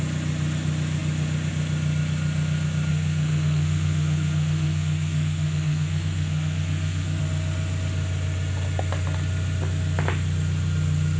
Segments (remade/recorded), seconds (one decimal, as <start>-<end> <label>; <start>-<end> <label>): 0.0-2.9 recorded; 2.9-7.2 remade; 7.2-11.2 recorded